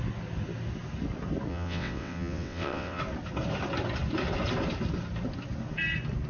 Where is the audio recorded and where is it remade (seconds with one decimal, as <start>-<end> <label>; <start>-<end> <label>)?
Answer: 0.0-1.5 recorded; 1.5-3.0 remade; 3.0-6.3 recorded